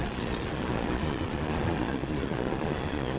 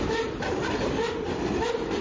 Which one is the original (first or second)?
second